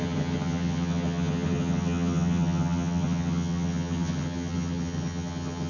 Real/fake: fake